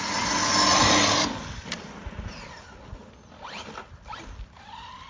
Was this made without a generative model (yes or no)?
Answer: yes